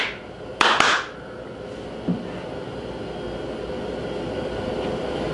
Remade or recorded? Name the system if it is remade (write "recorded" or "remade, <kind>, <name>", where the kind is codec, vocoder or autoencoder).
recorded